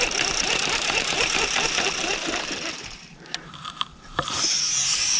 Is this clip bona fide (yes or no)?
no